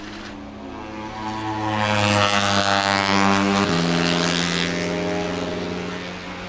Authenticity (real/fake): real